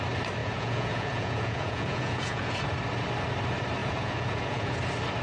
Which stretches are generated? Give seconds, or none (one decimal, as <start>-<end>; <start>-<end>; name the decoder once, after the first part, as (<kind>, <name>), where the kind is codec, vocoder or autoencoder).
0.4-2.6 (vocoder, Vocos); 3.8-4.8